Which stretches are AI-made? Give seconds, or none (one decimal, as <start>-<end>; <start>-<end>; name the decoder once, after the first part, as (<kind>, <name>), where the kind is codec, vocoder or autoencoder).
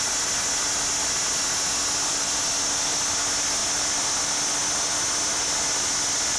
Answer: none